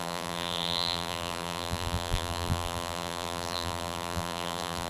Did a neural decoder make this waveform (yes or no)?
yes